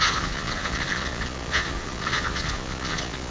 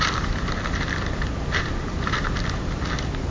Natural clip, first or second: second